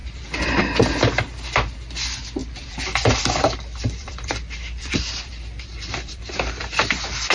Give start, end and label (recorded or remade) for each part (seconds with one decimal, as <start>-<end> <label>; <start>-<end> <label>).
0.0-0.6 remade; 0.6-2.4 recorded; 2.4-6.8 remade; 6.8-7.3 recorded